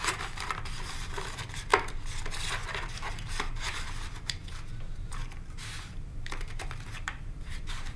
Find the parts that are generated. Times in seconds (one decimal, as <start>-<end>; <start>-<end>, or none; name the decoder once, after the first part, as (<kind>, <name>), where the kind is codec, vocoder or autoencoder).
0.0-1.7 (vocoder, BigVGAN v2); 3.1-4.4; 5.0-8.0